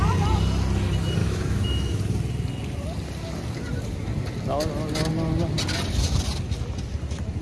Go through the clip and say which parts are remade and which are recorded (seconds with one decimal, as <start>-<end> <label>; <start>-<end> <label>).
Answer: 0.0-1.2 recorded; 1.2-2.0 remade; 2.0-7.4 recorded